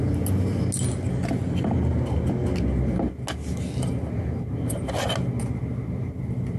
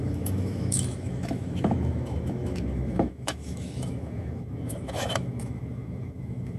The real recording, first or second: first